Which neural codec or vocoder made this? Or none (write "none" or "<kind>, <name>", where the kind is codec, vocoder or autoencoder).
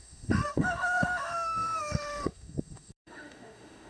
autoencoder, DAC-VAE